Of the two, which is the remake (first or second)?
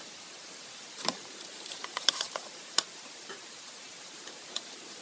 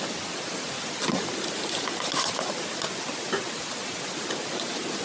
first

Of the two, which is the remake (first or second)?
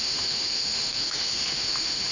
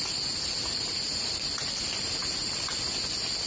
first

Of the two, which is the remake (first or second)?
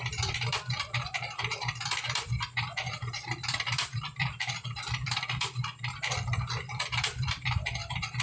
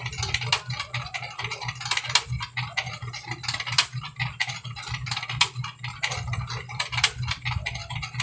first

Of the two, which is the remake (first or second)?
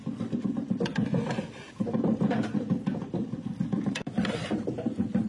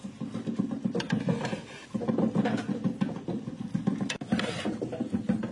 first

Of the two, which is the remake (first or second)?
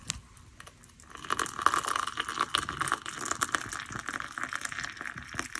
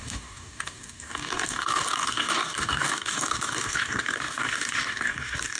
second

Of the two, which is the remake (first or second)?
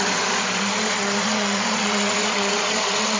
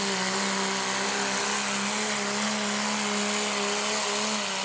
first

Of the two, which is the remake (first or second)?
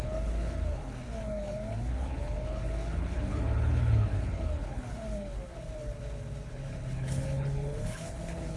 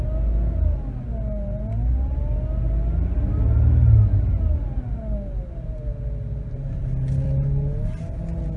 first